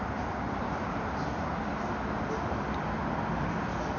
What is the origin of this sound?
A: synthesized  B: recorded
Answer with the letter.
B